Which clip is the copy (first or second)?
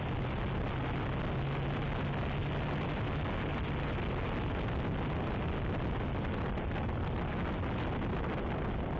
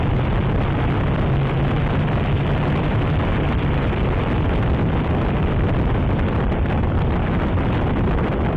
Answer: second